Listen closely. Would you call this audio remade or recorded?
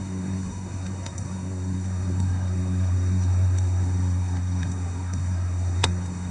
remade